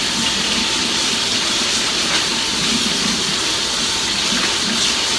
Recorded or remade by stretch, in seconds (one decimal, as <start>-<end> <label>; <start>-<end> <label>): 0.0-5.2 recorded